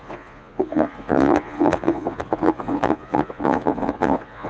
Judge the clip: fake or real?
fake